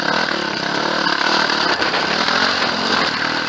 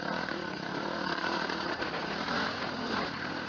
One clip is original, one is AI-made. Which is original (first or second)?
first